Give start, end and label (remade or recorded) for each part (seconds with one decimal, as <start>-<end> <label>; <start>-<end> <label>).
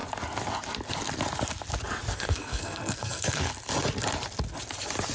0.0-2.1 recorded; 2.1-3.5 remade; 3.5-5.1 recorded